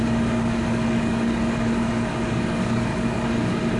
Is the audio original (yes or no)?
no